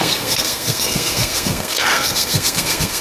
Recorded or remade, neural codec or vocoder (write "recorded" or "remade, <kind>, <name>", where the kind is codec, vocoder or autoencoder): remade, codec, SNAC